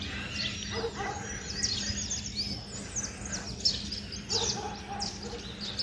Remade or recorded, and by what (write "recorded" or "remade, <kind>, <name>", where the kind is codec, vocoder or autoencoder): recorded